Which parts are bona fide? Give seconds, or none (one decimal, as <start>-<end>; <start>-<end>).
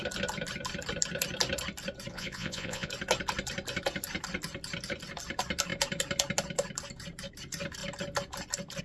0.0-2.1; 2.9-8.8